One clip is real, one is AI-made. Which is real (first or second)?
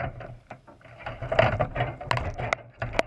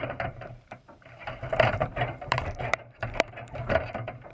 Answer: first